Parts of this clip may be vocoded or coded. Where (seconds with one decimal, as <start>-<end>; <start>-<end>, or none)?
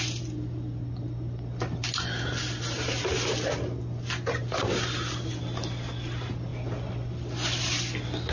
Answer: none